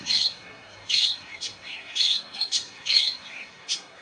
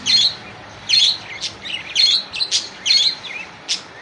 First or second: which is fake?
first